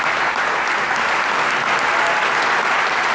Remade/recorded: recorded